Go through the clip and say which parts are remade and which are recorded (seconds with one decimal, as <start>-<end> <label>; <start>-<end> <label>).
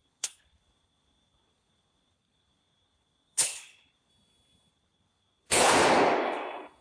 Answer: 0.0-4.1 remade; 4.1-4.7 recorded; 4.7-5.7 remade; 5.7-6.8 recorded